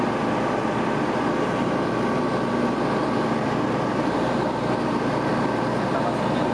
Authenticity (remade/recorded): recorded